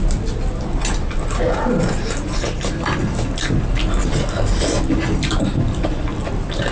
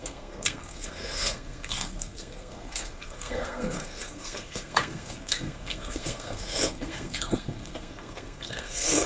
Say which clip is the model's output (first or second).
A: second